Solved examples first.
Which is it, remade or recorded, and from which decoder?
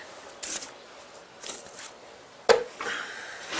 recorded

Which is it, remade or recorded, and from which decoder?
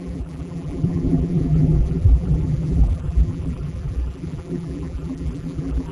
remade, vocoder, BigVGAN v2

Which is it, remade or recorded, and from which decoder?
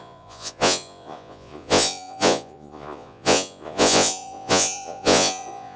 remade, vocoder, Vocos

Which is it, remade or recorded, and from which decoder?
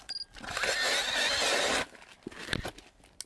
recorded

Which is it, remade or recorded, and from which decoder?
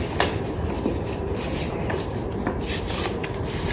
recorded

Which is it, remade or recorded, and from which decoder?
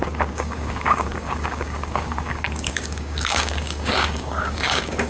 remade, codec, DAC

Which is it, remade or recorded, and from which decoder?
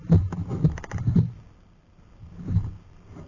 recorded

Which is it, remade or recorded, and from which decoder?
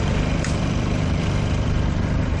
remade, vocoder, BigVGAN v2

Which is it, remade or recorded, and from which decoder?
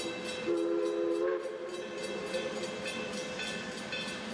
recorded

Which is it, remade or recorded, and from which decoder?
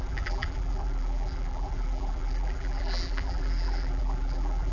remade, vocoder, BigVGAN v2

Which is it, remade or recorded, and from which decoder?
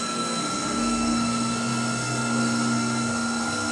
remade, codec, SNAC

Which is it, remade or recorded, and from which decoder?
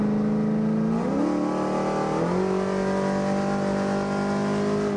recorded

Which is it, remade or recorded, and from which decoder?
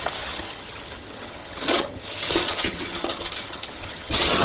remade, vocoder, HiFi-GAN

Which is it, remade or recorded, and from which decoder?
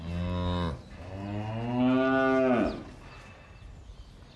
recorded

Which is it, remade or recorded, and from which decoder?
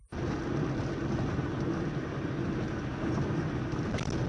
recorded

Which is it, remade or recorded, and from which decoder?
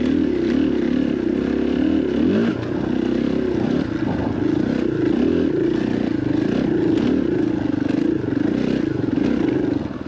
recorded